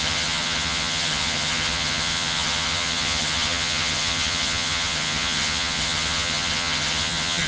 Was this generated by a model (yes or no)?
yes